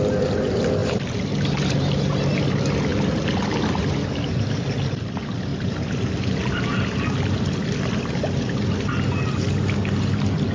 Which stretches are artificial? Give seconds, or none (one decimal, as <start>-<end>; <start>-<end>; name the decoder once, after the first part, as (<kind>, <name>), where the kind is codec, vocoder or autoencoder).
none